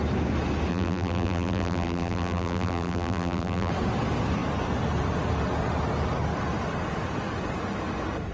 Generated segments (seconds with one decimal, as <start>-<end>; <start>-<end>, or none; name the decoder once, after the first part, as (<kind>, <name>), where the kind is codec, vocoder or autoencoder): 0.7-3.7 (vocoder, BigVGAN v2)